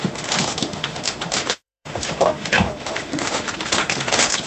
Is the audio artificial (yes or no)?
yes